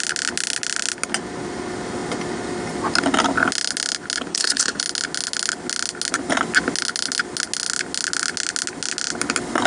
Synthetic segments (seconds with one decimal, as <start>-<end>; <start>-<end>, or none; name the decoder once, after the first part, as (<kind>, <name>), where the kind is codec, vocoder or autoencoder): 4.3-4.8 (codec, HILCodec)